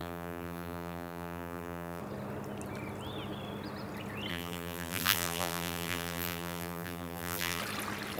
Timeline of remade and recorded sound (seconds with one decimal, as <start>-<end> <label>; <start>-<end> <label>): 0.0-2.0 remade; 2.0-4.3 recorded; 4.3-7.6 remade; 7.6-8.2 recorded